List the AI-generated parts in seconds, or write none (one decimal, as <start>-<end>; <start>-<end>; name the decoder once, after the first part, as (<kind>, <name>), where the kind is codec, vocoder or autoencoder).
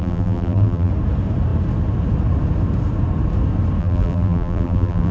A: 0.0-0.9 (vocoder, BigVGAN v2); 3.8-5.1